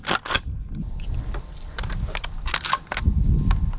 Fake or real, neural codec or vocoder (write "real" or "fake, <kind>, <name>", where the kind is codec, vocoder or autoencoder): real